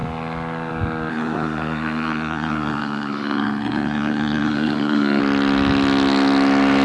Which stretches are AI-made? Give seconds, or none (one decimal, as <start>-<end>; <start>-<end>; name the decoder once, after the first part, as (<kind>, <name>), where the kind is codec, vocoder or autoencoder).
1.1-5.2 (codec, SNAC)